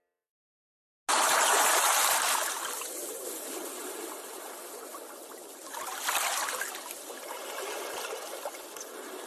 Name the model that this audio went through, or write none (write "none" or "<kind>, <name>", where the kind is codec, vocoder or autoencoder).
none